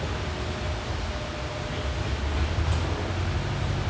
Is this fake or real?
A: real